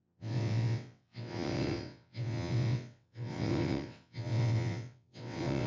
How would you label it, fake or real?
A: fake